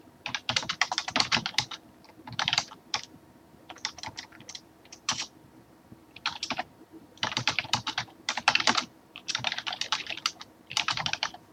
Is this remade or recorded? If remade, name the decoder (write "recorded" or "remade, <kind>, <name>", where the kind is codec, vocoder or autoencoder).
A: remade, vocoder, BigVGAN v2